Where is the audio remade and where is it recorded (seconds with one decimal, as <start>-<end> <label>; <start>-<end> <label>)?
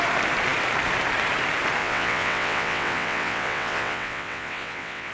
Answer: 0.0-1.8 recorded; 1.8-5.1 remade